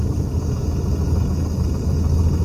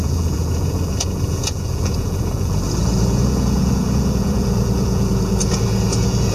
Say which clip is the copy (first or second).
second